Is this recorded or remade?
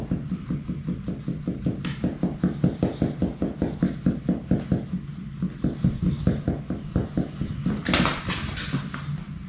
recorded